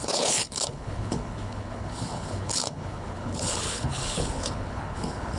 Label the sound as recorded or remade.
remade